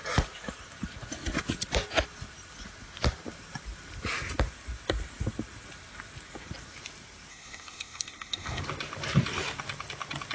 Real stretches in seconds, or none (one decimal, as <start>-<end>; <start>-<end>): 0.0-7.3; 8.6-10.3